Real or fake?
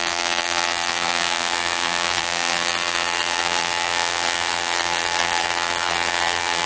fake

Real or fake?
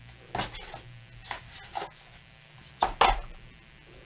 real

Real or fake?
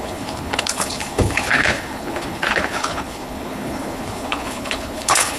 fake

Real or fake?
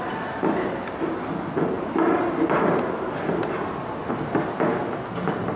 real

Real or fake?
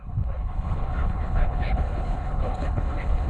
fake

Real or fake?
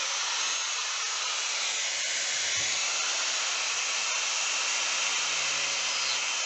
real